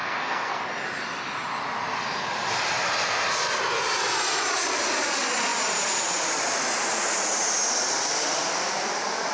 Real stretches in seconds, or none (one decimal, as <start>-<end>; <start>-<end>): 0.6-9.3